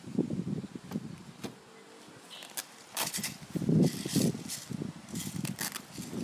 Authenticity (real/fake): real